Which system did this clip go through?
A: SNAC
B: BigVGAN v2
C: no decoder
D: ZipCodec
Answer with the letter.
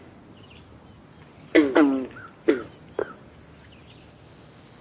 C